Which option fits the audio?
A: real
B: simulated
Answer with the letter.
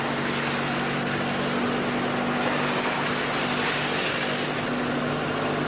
A